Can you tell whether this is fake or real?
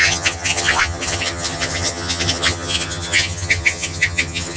fake